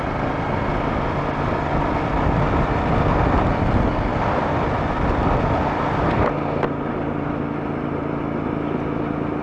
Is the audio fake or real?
real